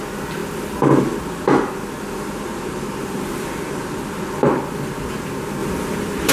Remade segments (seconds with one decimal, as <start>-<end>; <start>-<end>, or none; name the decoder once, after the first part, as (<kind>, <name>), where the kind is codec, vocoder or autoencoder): 0.4-1.0 (vocoder, BigVGAN v2); 2.5-4.4; 5.6-6.3